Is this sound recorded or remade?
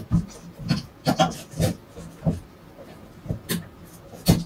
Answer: recorded